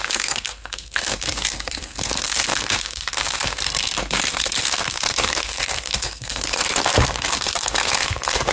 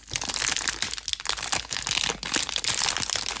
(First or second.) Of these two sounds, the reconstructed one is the first